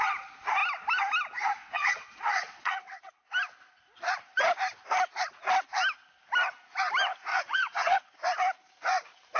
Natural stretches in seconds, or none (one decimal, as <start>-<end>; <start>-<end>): 0.0-1.6; 3.1-7.3; 8.1-9.4